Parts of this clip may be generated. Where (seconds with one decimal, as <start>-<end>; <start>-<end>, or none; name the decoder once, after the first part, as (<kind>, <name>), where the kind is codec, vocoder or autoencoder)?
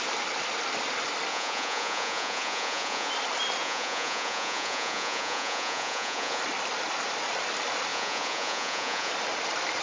1.3-3.1 (vocoder, Vocos); 3.6-6.4; 7.9-9.1